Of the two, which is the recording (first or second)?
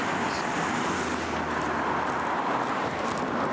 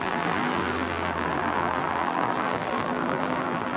first